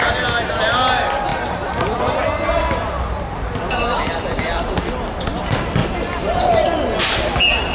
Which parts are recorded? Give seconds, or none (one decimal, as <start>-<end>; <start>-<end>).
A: 0.0-7.7